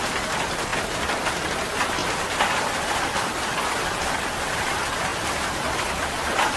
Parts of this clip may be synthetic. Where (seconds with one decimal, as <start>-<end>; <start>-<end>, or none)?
0.0-5.1; 5.7-6.6